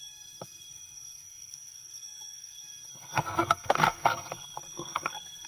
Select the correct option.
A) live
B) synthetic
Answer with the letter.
B